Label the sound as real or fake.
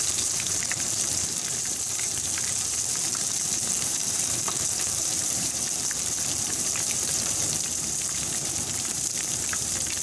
fake